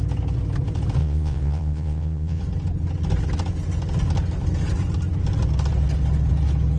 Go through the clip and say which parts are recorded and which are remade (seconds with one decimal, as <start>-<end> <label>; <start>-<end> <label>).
0.0-1.0 recorded; 1.0-2.4 remade; 2.4-6.8 recorded